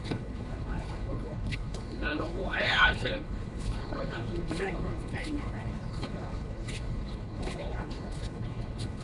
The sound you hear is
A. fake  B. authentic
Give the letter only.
A